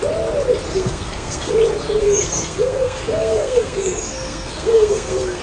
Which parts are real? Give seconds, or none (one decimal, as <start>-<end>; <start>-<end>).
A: 0.0-0.7; 1.5-2.0